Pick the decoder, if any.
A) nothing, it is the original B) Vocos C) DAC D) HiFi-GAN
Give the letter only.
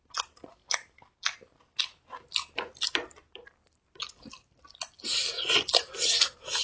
A